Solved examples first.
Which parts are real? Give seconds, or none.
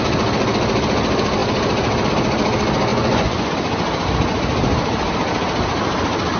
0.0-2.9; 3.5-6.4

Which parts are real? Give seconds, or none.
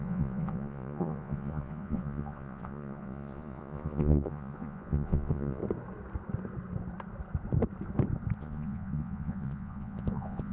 5.6-8.4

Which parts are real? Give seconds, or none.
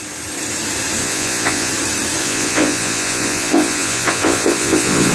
0.0-1.0; 1.7-2.2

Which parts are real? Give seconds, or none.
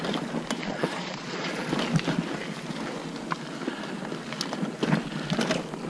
0.0-0.6; 1.7-5.9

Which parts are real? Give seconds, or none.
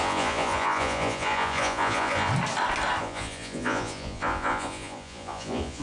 2.3-3.0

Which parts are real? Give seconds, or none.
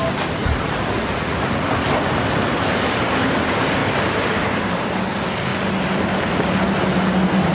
0.0-0.4; 1.7-7.5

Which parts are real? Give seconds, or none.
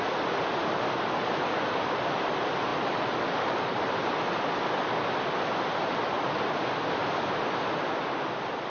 0.0-8.7